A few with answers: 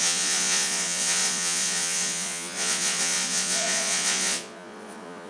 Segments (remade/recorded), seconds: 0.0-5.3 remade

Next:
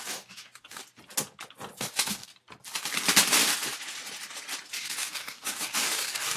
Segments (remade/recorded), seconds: 0.0-0.8 remade; 0.8-1.8 recorded; 1.8-2.3 remade; 2.3-4.7 recorded; 4.7-6.4 remade

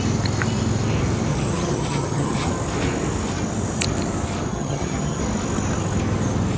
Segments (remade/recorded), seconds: 0.0-1.3 recorded; 1.3-2.5 remade; 2.5-4.5 recorded; 4.5-5.2 remade; 5.2-6.6 recorded

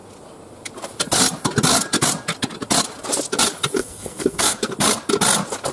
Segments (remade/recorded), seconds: 0.0-3.8 recorded; 3.8-4.7 remade; 4.7-5.7 recorded